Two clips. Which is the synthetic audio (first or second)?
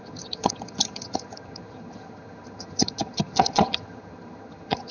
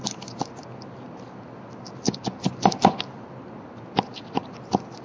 first